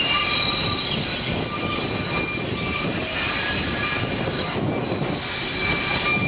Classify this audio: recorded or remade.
recorded